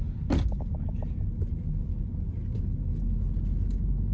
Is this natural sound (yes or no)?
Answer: yes